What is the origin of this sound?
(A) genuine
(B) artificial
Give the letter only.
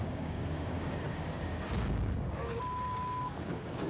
B